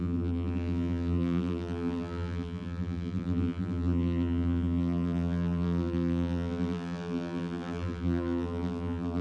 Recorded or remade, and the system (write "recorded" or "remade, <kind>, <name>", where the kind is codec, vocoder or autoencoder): remade, vocoder, BigVGAN v2